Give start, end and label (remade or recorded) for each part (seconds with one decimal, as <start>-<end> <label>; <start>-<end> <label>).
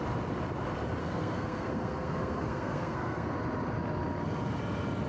0.0-1.0 recorded; 1.0-3.3 remade; 3.3-5.1 recorded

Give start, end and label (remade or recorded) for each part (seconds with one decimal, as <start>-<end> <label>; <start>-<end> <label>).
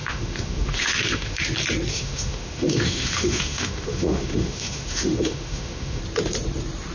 0.0-1.4 remade; 1.4-1.9 recorded; 1.9-6.0 remade; 6.0-6.9 recorded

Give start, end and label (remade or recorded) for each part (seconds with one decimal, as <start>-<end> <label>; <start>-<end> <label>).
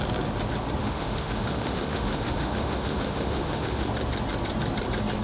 0.0-0.8 recorded; 0.8-3.9 remade; 3.9-5.2 recorded